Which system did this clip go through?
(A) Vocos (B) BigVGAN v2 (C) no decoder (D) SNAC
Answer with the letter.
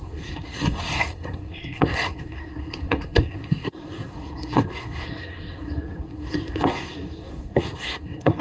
D